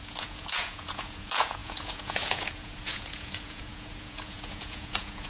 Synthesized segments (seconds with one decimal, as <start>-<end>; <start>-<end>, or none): 0.0-5.3